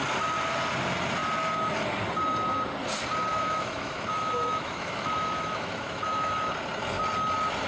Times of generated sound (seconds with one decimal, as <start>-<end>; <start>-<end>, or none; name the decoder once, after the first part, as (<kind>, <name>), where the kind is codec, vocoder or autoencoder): 3.3-6.5 (autoencoder, DAC-VAE)